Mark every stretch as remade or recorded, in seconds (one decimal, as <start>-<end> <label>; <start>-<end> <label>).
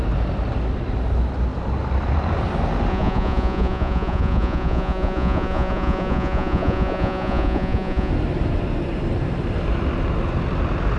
0.0-2.9 recorded; 2.9-8.1 remade; 8.1-11.0 recorded